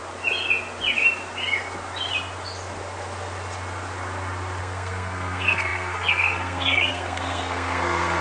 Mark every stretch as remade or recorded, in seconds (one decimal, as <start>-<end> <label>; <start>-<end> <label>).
0.0-4.6 recorded; 4.6-8.2 remade